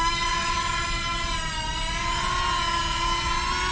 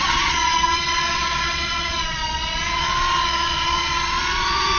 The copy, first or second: second